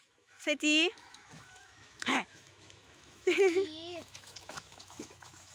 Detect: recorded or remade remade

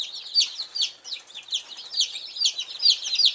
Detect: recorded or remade recorded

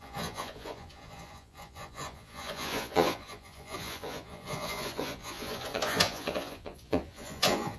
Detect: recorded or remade remade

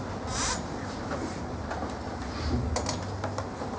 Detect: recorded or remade recorded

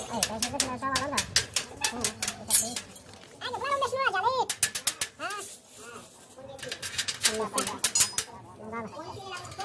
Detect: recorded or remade recorded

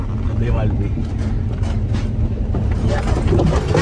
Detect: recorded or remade recorded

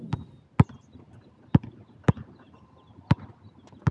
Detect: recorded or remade recorded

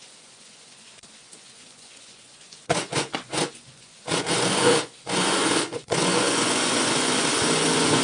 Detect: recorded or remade remade